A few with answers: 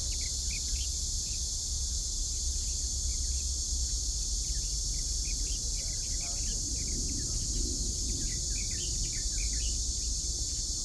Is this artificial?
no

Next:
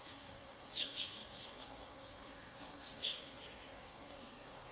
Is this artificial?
yes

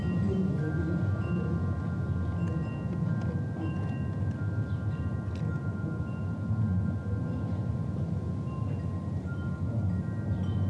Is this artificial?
no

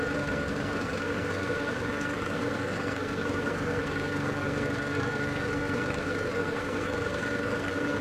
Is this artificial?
yes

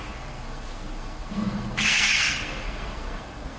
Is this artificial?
yes